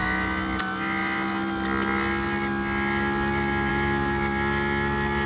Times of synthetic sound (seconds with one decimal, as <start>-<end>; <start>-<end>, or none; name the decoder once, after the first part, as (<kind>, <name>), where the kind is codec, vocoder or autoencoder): none